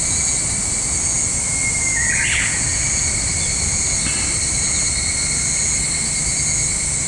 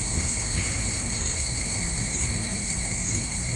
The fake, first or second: second